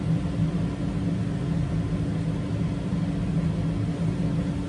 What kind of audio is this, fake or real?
real